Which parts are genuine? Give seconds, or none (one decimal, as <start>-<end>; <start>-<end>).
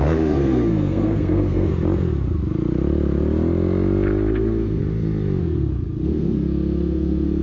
1.7-4.3; 4.8-5.4